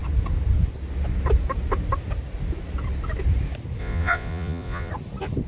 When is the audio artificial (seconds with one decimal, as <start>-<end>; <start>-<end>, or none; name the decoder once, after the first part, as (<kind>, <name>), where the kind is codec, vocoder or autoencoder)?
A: 3.8-4.9 (vocoder, Vocos)